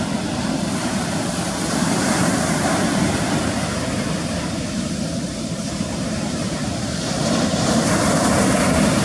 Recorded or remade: remade